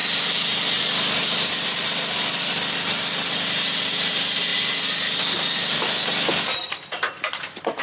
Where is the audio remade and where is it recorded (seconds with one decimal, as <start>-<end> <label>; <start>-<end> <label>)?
0.0-7.8 recorded